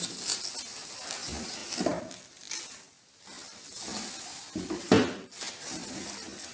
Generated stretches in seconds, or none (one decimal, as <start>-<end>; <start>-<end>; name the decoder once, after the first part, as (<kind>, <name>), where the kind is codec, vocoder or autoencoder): none